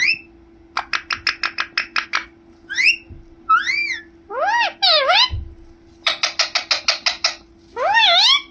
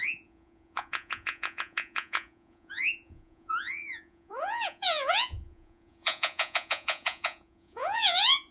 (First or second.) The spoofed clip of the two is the second